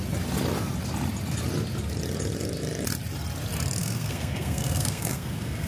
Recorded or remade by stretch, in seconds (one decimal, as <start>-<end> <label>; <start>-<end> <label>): 0.0-3.8 recorded; 3.8-5.7 remade